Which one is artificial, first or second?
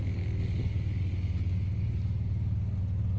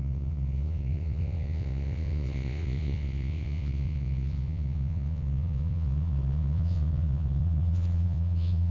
second